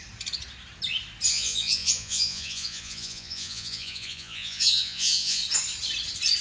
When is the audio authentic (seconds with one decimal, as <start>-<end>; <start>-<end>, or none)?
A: 0.0-1.3; 5.4-6.4